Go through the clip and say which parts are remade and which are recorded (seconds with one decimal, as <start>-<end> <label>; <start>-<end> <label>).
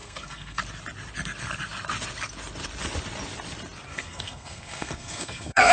0.0-0.6 remade; 0.6-3.9 recorded; 3.9-5.7 remade